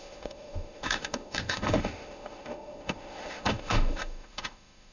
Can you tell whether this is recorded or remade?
remade